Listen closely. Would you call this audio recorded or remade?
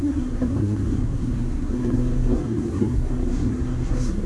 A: remade